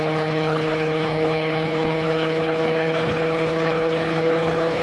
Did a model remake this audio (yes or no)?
yes